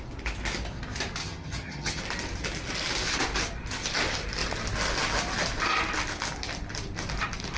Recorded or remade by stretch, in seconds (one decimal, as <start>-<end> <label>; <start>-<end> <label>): 0.0-1.2 recorded; 1.2-2.0 remade; 2.0-7.6 recorded